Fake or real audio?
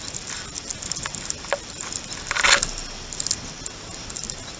real